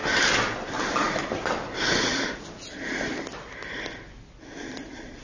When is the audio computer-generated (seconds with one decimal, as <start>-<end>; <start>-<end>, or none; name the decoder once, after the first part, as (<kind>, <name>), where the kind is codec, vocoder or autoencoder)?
none